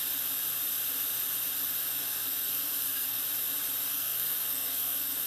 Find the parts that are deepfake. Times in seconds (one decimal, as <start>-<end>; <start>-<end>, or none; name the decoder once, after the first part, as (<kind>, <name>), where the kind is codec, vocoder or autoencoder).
1.9-3.2 (codec, SNAC); 3.9-5.3